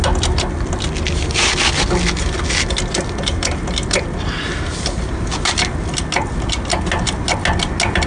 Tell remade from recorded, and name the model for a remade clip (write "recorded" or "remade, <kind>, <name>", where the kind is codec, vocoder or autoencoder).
recorded